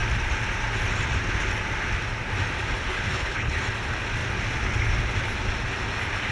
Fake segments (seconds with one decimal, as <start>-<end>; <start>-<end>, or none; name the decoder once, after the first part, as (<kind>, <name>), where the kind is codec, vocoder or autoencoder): 2.9-3.6 (codec, HILCodec)

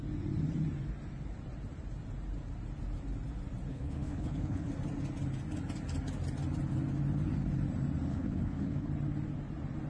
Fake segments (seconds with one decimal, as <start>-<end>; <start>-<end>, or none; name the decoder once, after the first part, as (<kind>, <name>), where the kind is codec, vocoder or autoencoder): 3.7-4.7 (codec, HILCodec); 8.1-8.9

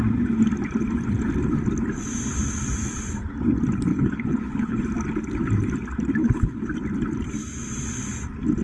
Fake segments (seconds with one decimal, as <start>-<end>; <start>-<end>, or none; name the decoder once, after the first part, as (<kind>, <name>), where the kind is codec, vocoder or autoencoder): 3.9-4.8 (codec, HILCodec); 6.2-6.7

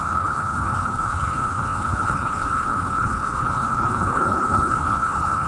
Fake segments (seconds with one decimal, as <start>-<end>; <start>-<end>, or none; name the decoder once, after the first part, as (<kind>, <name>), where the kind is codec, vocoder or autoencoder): 0.0-5.5 (codec, HILCodec)

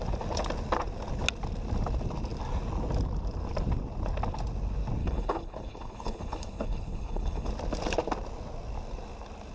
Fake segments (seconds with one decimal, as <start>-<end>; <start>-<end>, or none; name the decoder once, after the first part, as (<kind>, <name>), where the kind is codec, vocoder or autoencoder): 5.0-7.5 (codec, HILCodec)

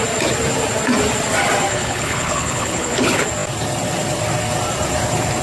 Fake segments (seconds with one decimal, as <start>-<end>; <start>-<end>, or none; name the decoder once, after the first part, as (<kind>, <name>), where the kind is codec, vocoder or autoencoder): 1.7-3.2 (codec, HILCodec)